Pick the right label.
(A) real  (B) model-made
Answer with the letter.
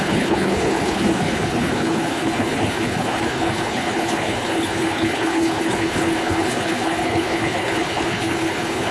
B